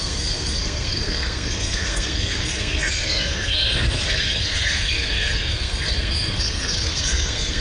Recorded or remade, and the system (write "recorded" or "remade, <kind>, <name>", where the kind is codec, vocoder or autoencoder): remade, codec, SNAC